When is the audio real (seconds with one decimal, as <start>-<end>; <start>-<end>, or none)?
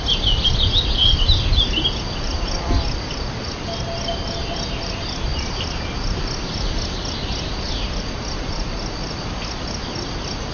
0.0-10.5